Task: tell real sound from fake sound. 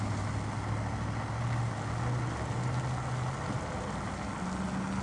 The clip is real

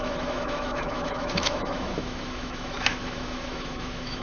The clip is fake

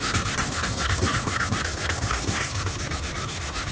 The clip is fake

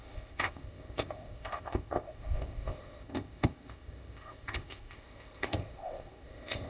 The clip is fake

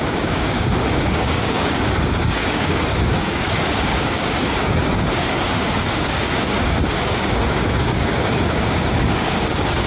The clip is fake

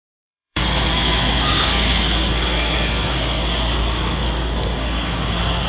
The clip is fake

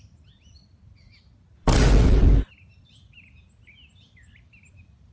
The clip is real